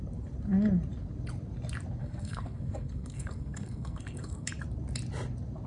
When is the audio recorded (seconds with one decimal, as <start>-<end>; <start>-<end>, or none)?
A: 0.0-2.0; 4.5-5.7